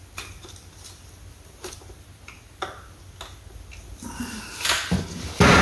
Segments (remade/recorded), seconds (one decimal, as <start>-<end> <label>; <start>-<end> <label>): 0.0-5.6 recorded